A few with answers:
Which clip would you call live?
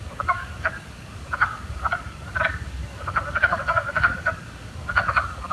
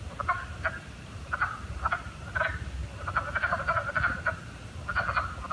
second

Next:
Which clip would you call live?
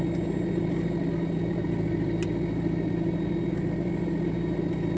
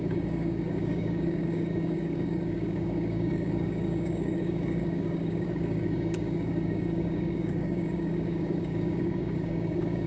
first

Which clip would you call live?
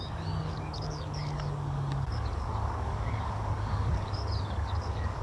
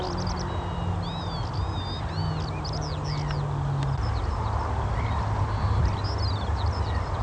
second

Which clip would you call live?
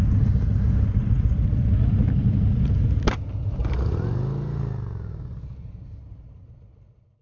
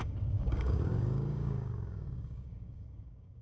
first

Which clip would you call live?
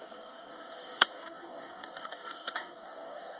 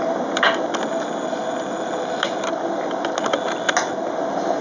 second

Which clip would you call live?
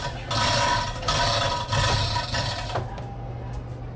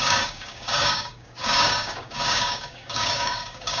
first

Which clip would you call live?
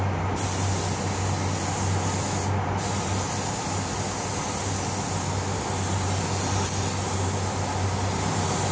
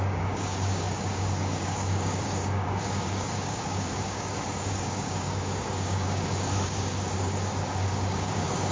first